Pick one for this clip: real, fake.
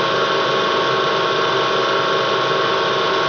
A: real